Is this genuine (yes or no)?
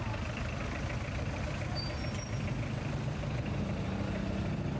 yes